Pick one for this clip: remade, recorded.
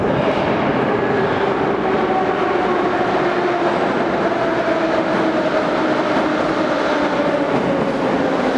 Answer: recorded